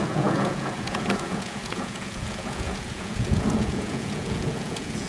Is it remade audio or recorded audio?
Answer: remade